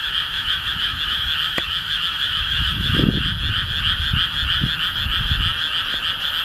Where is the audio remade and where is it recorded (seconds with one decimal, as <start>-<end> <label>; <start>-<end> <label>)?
0.0-3.1 remade; 3.1-6.4 recorded

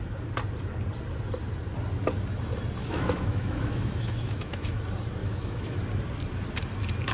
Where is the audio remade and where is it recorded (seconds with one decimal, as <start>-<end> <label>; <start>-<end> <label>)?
0.0-2.8 recorded; 2.8-4.8 remade; 4.8-5.2 recorded; 5.2-5.8 remade; 5.8-7.1 recorded

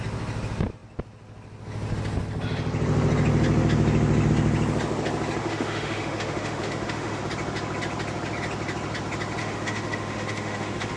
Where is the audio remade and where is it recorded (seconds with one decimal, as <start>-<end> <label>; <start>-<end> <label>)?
0.0-5.4 recorded; 5.4-7.2 remade; 7.2-9.4 recorded; 9.4-11.0 remade

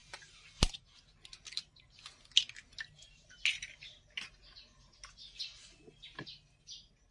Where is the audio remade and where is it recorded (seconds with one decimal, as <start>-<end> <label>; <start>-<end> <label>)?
0.0-7.1 recorded

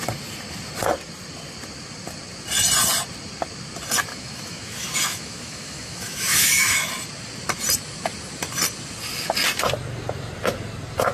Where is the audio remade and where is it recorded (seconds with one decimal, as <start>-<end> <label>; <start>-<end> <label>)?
0.0-4.1 recorded; 4.1-6.9 remade; 6.9-11.1 recorded

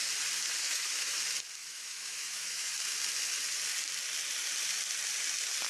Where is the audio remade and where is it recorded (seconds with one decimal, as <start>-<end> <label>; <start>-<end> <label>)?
0.0-0.6 recorded; 0.6-1.2 remade; 1.2-1.6 recorded; 1.6-2.7 remade; 2.7-5.7 recorded